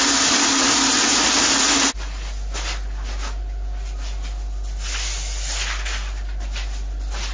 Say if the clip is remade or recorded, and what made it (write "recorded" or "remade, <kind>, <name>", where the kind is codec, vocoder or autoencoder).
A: recorded